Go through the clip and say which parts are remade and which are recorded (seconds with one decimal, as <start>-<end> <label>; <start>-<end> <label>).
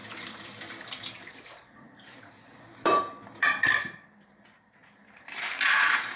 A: 0.0-6.2 remade